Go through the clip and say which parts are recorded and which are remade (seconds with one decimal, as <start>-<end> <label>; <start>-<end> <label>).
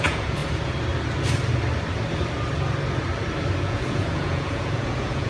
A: 0.0-0.4 remade; 0.4-3.6 recorded; 3.6-5.3 remade